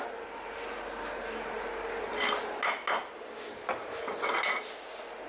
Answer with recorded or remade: recorded